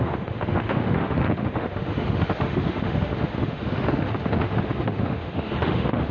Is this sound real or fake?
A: fake